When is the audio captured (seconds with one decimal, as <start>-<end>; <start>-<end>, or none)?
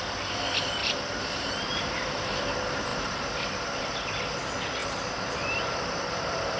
0.0-0.8; 2.4-2.9; 3.8-4.8